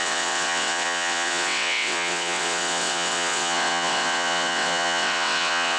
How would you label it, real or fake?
fake